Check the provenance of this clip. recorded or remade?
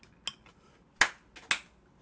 recorded